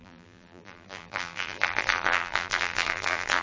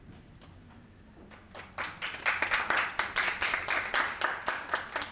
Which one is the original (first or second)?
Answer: second